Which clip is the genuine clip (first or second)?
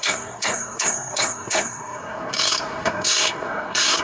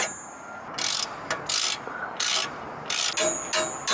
second